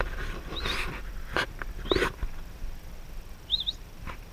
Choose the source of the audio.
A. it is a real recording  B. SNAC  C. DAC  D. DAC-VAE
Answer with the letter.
A